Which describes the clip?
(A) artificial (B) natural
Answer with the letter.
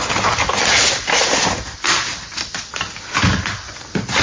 B